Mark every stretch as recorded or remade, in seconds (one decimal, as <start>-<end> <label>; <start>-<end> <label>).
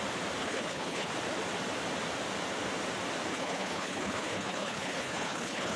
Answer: 0.0-0.4 recorded; 0.4-1.1 remade; 1.1-3.3 recorded; 3.3-5.8 remade